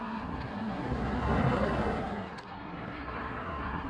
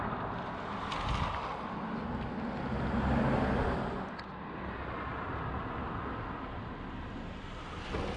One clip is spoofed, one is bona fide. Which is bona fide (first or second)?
second